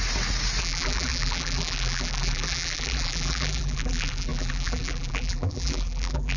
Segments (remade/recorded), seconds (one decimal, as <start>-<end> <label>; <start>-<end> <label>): 0.0-0.6 recorded; 0.6-6.4 remade